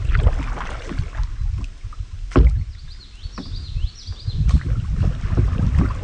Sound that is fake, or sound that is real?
real